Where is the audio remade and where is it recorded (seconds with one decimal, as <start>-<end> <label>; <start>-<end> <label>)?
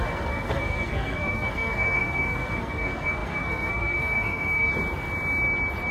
0.0-4.7 remade; 4.7-5.9 recorded